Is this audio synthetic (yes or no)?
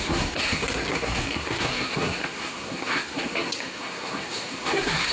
yes